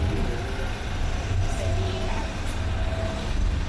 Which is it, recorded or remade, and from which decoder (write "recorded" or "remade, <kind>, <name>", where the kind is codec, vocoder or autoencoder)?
recorded